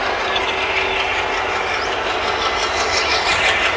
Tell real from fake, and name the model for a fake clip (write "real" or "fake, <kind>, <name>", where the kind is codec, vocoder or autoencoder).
real